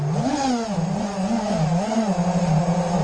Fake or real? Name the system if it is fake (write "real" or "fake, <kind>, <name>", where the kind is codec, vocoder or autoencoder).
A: fake, vocoder, BigVGAN v2